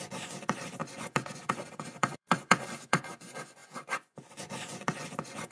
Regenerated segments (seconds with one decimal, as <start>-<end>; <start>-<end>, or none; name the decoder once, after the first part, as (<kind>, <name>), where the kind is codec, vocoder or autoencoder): 0.0-5.5 (vocoder, Vocos)